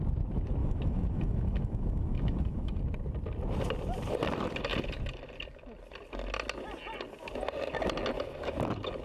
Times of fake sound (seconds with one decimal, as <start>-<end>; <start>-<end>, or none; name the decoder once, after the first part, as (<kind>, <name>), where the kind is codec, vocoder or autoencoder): 0.6-2.8 (autoencoder, DAC-VAE)